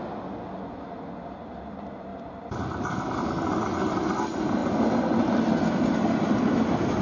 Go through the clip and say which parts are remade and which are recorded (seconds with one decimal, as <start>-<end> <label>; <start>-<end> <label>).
0.0-2.1 recorded; 2.1-2.9 remade; 2.9-7.0 recorded